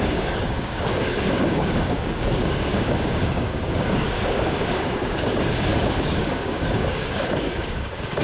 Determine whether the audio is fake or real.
fake